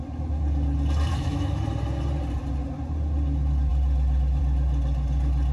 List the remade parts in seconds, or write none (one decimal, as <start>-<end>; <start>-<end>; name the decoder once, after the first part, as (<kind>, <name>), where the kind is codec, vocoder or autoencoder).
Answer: 1.1-1.6 (autoencoder, DAC-VAE)